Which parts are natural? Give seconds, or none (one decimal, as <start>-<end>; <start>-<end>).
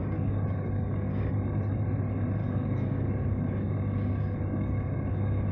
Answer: 1.3-2.4